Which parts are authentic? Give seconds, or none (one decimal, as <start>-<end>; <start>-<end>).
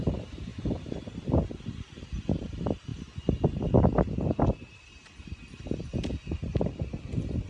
0.0-7.5